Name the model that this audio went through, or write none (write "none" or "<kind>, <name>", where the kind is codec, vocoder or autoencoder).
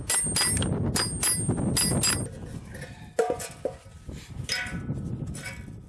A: none